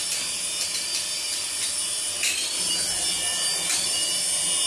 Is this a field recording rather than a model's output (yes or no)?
yes